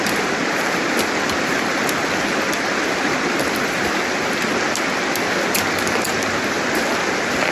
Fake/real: real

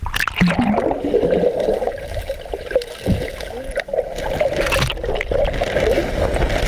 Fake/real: real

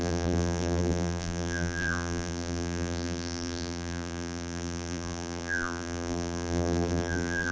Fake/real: fake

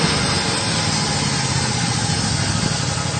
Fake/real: real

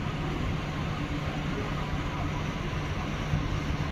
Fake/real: real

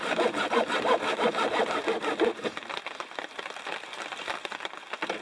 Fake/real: fake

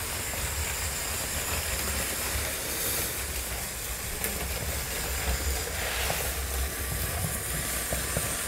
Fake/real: real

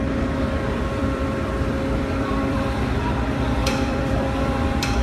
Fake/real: fake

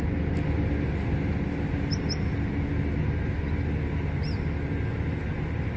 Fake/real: fake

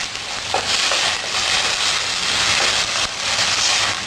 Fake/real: real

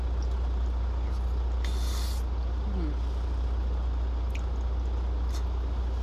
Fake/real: real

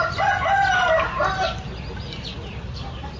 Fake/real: real